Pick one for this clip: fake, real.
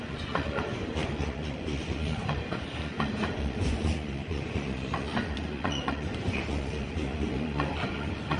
fake